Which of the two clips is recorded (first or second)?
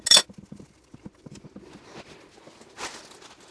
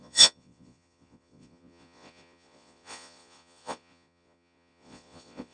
first